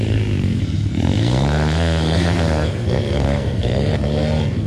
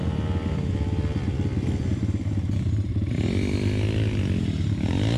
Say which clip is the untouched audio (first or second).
second